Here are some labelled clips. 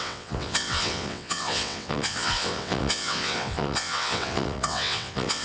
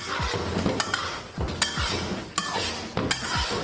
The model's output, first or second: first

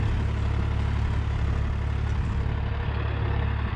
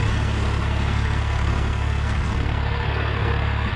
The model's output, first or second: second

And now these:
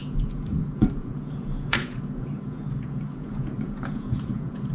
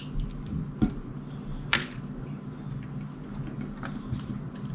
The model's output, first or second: first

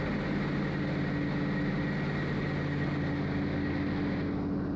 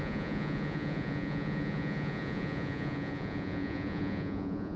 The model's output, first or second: second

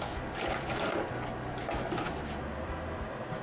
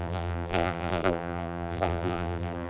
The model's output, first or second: second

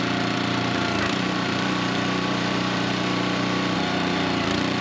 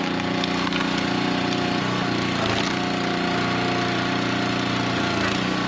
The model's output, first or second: first